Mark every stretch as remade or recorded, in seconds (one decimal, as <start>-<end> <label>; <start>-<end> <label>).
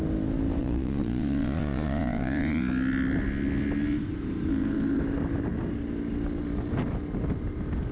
0.0-0.6 recorded; 0.6-2.6 remade; 2.6-7.9 recorded